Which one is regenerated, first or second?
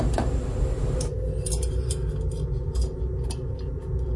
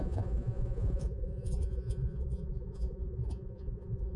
second